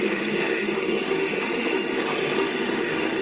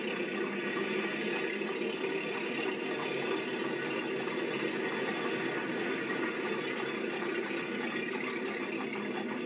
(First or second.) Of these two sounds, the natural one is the second